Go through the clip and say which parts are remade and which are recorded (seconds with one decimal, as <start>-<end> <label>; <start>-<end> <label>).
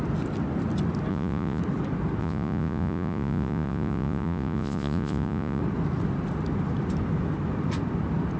0.0-1.1 recorded; 1.1-1.6 remade; 1.6-2.2 recorded; 2.2-5.6 remade; 5.6-8.4 recorded